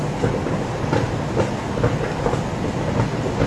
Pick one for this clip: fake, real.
real